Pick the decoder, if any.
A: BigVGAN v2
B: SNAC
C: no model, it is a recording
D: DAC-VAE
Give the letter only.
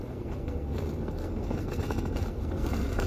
B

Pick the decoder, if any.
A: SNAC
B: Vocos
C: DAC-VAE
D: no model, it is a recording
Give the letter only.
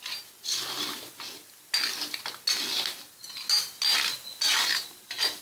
D